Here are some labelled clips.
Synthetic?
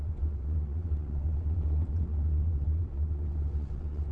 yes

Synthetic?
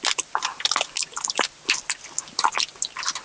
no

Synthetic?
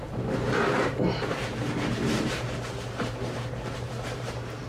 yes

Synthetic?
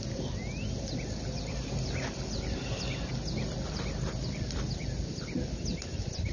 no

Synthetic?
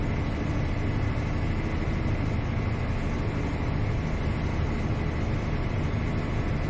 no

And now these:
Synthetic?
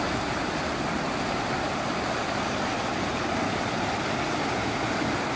no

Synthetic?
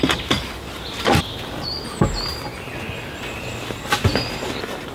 no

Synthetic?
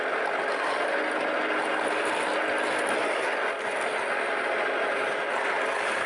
no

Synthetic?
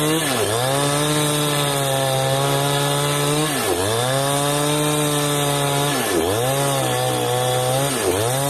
no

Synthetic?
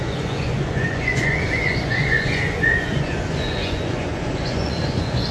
yes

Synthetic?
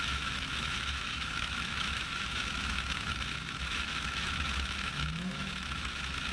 yes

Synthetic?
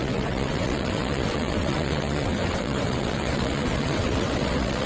yes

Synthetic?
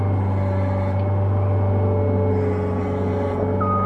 no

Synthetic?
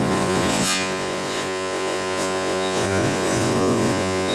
yes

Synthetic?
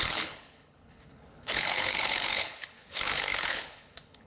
yes